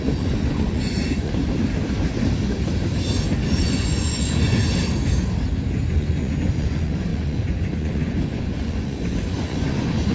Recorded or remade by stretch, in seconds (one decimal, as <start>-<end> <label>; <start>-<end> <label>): 0.0-1.4 remade; 1.4-3.6 recorded; 3.6-4.6 remade; 4.6-5.9 recorded; 5.9-10.1 remade